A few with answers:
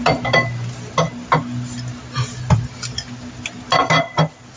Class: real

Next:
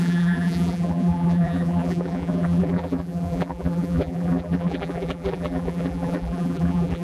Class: fake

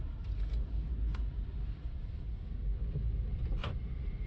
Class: real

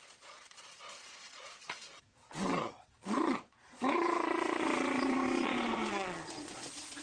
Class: fake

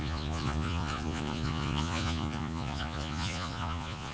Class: fake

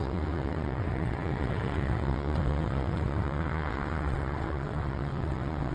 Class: fake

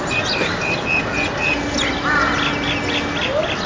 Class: real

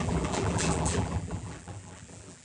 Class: fake